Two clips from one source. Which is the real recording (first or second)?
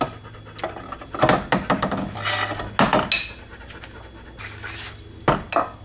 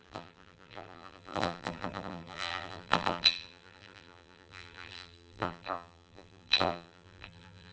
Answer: first